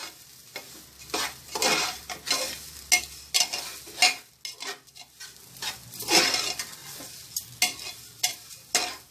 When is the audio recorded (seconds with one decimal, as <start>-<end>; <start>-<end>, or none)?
0.0-9.1